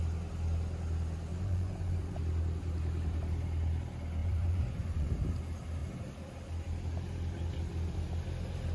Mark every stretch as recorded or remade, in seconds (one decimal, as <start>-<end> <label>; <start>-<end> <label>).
0.0-1.3 recorded; 1.3-2.2 remade; 2.2-4.2 recorded; 4.2-5.1 remade; 5.1-8.7 recorded